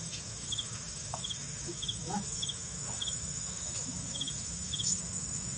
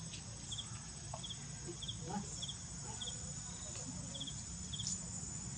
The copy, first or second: first